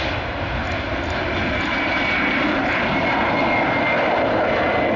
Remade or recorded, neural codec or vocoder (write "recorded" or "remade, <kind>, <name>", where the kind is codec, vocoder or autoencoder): recorded